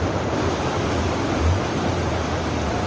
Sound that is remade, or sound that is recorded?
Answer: recorded